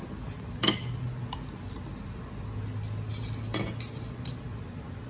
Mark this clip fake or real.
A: real